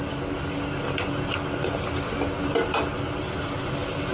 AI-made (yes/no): no